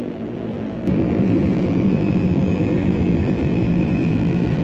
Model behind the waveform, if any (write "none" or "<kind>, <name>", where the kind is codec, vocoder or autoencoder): vocoder, BigVGAN v2